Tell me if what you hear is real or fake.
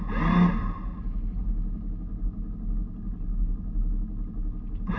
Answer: real